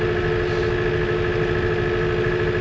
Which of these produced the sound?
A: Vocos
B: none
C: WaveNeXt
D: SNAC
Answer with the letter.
B